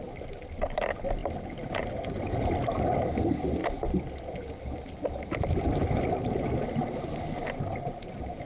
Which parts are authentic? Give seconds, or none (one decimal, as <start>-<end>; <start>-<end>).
0.0-8.4